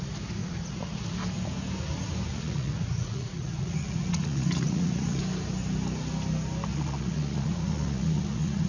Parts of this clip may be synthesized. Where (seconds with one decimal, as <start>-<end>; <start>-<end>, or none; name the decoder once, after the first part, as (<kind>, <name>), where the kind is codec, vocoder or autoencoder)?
0.4-1.0 (vocoder, Vocos); 2.3-5.2; 6.7-8.7